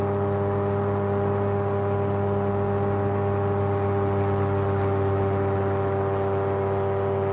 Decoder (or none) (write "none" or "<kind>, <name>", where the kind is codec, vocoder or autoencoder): none